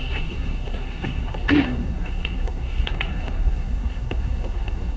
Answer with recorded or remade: remade